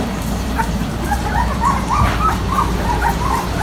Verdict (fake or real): fake